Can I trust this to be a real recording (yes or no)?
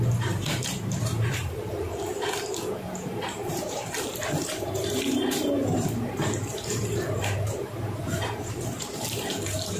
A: no